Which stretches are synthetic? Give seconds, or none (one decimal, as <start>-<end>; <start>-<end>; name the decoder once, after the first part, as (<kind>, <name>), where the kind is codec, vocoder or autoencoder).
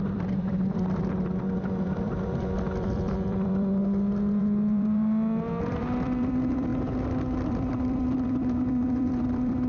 0.0-3.8 (vocoder, BigVGAN v2); 4.4-6.7; 7.5-9.7